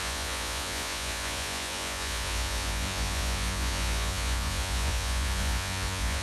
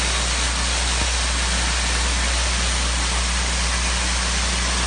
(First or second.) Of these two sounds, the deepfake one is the first